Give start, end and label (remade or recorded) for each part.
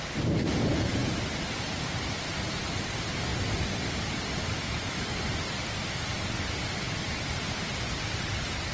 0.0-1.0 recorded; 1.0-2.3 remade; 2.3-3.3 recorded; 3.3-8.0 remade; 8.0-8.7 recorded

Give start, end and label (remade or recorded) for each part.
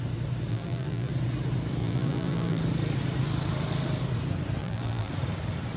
0.0-0.5 recorded; 0.5-1.1 remade; 1.1-1.8 recorded; 1.8-2.6 remade; 2.6-4.6 recorded; 4.6-5.1 remade; 5.1-5.8 recorded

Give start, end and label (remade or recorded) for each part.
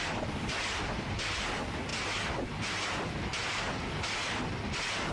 0.0-5.1 recorded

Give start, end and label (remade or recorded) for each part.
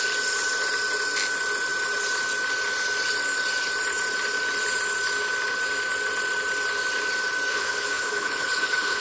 0.0-7.5 recorded; 7.5-9.0 remade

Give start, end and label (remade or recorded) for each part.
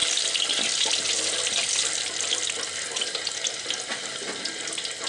0.0-5.1 recorded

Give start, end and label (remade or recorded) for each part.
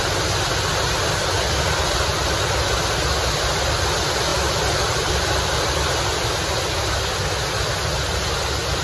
0.0-4.3 recorded; 4.3-6.3 remade; 6.3-8.8 recorded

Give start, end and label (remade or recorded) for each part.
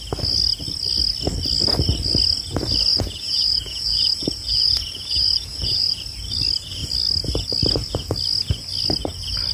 0.0-2.9 recorded; 2.9-6.0 remade; 6.0-9.5 recorded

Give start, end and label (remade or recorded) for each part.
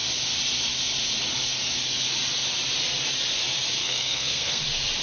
0.0-3.8 recorded; 3.8-4.6 remade; 4.6-5.0 recorded